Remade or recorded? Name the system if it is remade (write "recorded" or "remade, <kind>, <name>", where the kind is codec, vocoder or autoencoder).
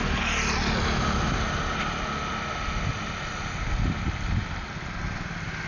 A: recorded